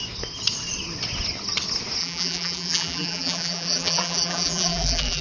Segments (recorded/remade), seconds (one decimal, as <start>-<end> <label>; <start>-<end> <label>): 0.0-2.0 recorded; 2.0-5.2 remade